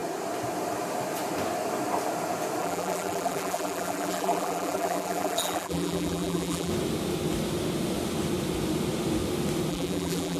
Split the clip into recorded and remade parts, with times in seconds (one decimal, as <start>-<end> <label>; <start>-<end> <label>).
0.0-2.6 recorded; 2.6-6.7 remade; 6.7-9.7 recorded; 9.7-10.4 remade